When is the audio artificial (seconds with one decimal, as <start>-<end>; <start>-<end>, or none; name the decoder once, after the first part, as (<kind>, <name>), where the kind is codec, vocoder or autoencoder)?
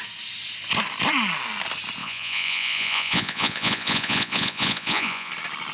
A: 2.0-5.3 (vocoder, Vocos)